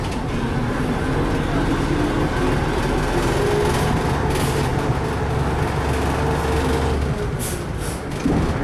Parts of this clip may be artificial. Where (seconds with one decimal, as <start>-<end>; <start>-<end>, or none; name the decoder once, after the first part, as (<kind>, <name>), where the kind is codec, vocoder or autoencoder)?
none

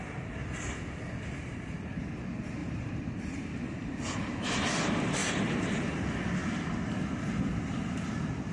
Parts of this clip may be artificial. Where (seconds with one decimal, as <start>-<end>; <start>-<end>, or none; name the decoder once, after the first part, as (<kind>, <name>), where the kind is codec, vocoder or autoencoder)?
2.6-3.9 (vocoder, BigVGAN v2); 5.2-5.9

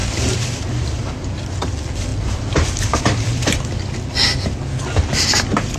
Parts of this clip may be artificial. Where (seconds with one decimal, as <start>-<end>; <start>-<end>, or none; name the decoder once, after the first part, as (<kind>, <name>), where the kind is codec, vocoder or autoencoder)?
0.0-4.2 (vocoder, BigVGAN v2); 4.8-5.8